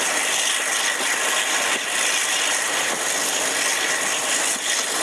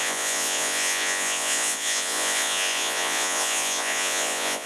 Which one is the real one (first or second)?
first